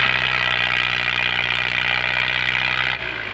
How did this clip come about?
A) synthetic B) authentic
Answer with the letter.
B